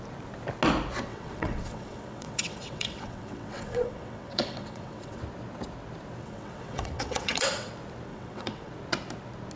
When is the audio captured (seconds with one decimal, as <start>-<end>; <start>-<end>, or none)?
0.0-1.1; 5.2-6.2; 7.7-8.1; 8.7-9.6